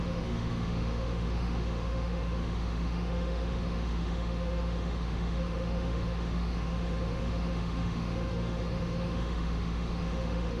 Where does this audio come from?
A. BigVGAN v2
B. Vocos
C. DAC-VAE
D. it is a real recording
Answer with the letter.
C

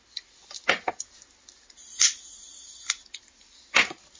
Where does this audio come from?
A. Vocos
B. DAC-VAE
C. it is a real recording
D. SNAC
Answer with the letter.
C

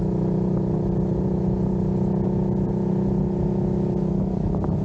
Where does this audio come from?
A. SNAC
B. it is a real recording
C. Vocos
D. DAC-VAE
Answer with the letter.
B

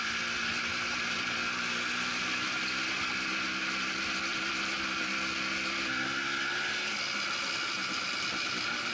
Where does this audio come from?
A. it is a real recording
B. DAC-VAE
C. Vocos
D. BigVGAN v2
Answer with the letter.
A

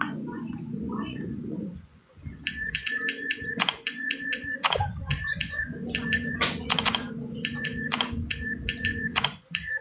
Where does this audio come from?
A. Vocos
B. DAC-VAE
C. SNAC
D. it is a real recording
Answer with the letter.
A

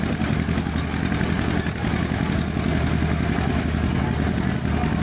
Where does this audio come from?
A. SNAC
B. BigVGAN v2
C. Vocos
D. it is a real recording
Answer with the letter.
D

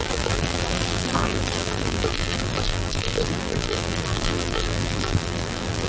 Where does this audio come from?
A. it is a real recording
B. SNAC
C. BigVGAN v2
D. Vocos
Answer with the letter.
C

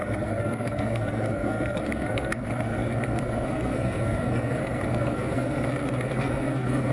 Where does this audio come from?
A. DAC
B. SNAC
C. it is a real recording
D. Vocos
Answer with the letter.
B